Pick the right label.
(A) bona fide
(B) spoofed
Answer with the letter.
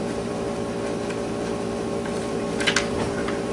B